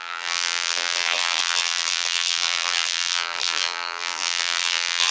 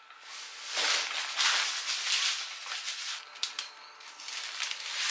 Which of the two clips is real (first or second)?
second